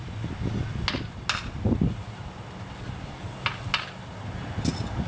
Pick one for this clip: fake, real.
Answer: real